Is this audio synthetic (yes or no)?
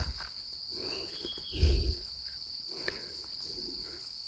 yes